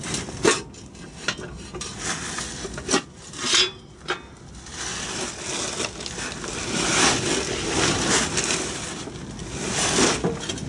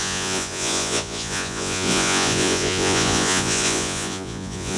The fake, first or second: second